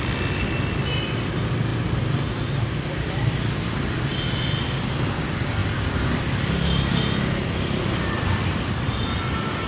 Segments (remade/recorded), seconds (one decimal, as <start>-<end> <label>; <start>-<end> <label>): 0.0-9.7 recorded